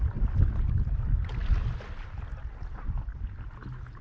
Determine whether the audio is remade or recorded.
recorded